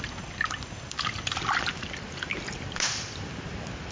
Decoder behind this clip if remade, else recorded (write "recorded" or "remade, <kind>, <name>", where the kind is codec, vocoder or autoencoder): recorded